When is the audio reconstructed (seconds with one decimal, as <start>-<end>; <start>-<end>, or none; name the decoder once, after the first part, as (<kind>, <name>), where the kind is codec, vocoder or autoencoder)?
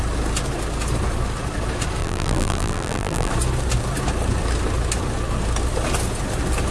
2.0-3.3 (vocoder, BigVGAN v2)